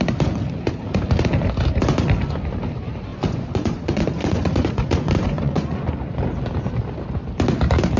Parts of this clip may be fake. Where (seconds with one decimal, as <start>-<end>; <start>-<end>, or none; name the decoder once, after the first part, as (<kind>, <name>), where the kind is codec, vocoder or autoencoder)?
3.1-5.9 (vocoder, Vocos)